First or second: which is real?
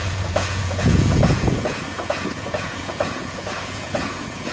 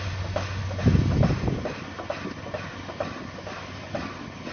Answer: second